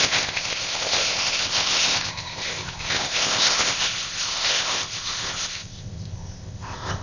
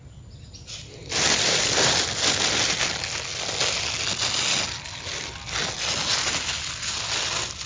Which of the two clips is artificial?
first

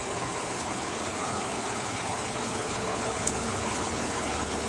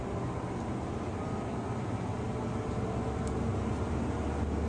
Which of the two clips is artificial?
first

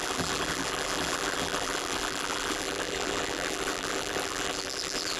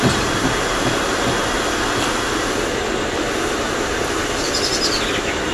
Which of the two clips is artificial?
first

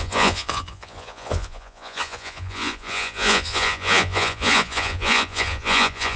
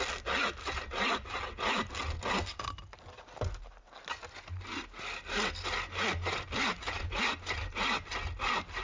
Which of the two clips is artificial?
first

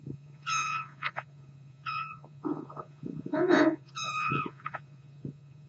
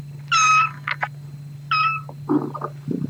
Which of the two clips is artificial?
first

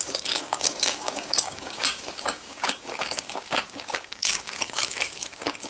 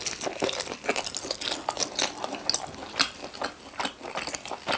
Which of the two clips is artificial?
first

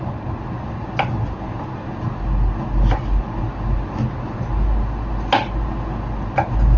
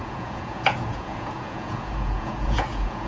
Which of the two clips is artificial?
second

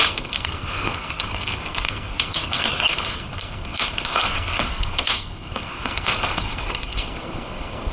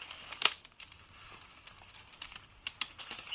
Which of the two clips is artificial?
first